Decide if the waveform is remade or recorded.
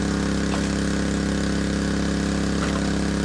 recorded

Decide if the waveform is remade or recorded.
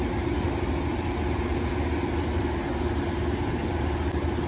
recorded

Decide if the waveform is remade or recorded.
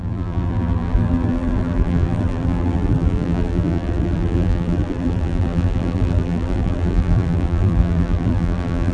remade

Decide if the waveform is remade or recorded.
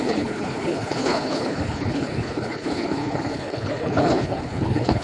remade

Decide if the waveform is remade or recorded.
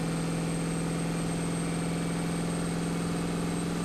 recorded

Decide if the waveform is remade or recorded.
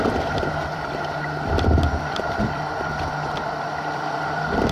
remade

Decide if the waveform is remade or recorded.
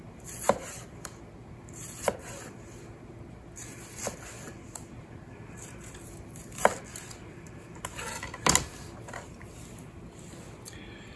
recorded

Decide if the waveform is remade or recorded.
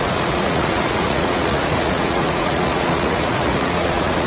remade